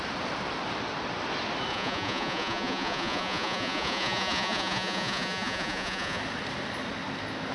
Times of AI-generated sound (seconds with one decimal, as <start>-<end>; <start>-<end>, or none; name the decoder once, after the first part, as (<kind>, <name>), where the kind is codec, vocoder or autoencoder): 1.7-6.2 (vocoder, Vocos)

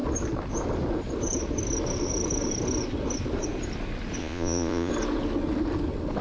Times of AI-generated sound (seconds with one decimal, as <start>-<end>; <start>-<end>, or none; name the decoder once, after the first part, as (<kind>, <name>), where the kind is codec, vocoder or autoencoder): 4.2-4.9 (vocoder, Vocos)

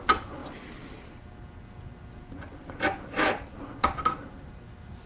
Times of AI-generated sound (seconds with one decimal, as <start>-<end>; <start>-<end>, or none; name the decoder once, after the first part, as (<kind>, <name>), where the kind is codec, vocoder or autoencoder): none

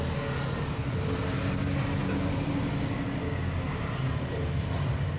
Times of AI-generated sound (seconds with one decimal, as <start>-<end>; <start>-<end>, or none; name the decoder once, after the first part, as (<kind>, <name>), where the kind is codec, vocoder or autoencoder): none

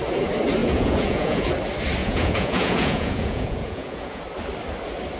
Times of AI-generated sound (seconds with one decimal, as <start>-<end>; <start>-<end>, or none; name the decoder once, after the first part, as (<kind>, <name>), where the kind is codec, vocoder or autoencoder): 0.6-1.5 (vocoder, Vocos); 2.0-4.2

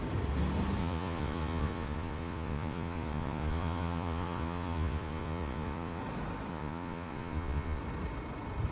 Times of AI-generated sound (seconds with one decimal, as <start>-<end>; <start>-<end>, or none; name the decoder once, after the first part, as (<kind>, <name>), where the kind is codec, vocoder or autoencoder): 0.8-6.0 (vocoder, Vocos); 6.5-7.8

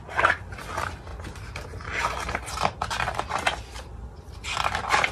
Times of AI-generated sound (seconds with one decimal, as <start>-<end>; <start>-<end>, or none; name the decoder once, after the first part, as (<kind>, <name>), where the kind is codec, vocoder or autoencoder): none

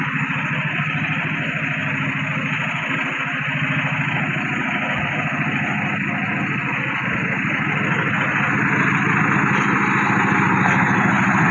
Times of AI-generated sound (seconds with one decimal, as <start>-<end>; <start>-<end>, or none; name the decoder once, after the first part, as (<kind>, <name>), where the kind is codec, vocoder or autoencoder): none